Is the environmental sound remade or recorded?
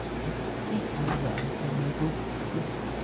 recorded